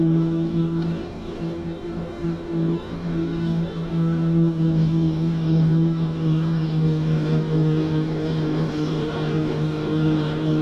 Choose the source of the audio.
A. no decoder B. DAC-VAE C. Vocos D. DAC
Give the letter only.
D